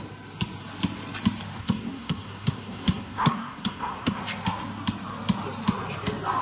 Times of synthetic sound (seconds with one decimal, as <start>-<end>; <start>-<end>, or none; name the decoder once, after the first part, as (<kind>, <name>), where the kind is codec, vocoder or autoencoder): 1.6-4.2 (codec, SNAC)